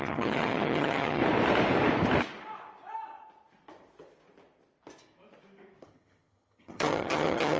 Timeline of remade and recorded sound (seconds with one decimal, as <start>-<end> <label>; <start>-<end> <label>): 0.0-1.2 remade; 1.2-5.8 recorded; 5.8-7.6 remade

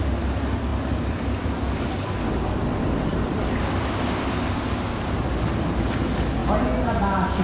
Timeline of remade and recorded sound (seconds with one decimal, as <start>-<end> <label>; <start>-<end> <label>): 0.0-0.7 recorded; 0.7-2.3 remade; 2.3-3.1 recorded; 3.1-4.8 remade; 4.8-7.4 recorded

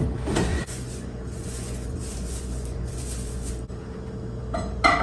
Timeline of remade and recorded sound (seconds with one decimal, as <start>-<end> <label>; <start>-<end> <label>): 0.0-0.5 recorded; 0.5-3.5 remade; 3.5-5.0 recorded

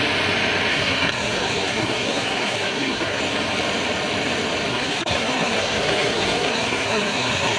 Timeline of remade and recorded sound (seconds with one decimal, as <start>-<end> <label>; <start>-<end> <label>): 0.0-0.7 recorded; 0.7-3.2 remade; 3.2-4.7 recorded; 4.7-7.6 remade

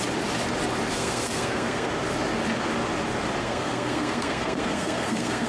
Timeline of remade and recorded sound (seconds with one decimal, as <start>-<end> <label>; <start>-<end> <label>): 0.0-0.9 recorded; 0.9-1.9 remade; 1.9-3.4 recorded; 3.4-5.5 remade

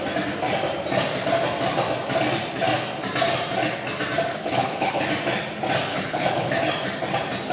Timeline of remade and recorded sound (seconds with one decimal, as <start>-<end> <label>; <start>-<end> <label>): 0.0-4.3 recorded; 4.3-5.1 remade; 5.1-5.9 recorded; 5.9-6.5 remade; 6.5-7.5 recorded